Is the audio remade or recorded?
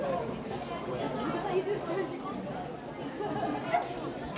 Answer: recorded